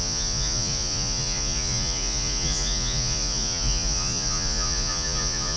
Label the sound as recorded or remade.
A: remade